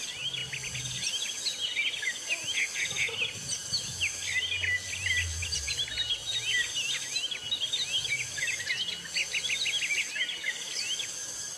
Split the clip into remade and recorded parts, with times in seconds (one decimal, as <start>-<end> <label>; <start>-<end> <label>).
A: 0.0-11.6 recorded